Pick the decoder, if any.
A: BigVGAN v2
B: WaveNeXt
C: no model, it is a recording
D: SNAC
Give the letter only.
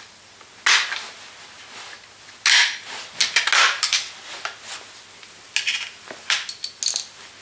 C